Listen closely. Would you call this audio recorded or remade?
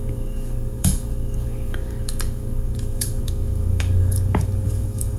remade